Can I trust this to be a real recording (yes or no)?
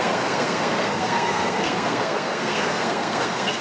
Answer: no